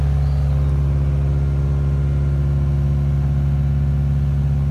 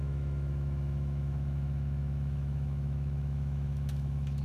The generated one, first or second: second